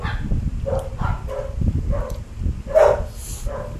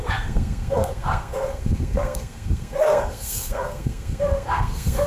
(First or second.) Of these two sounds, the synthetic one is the second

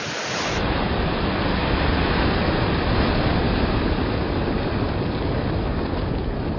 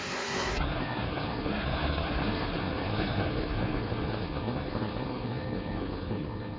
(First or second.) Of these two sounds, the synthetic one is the second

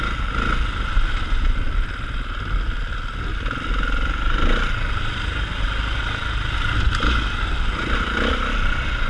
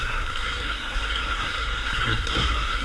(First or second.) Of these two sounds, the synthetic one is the second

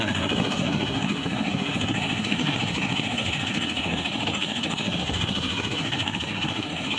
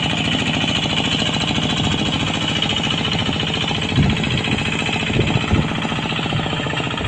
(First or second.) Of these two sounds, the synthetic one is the first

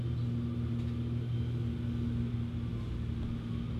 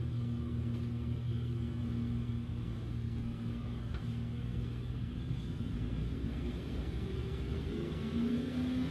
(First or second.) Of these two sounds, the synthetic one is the second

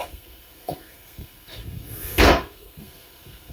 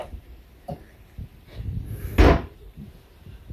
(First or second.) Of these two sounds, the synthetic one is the first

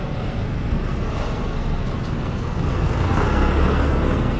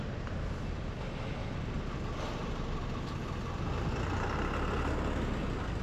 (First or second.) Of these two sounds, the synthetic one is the first